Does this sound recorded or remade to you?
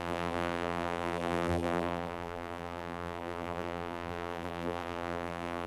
remade